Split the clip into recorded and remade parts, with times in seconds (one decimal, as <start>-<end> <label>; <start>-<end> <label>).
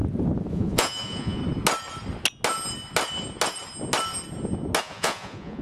0.0-0.5 recorded; 0.5-1.4 remade; 1.4-4.8 recorded; 4.8-5.6 remade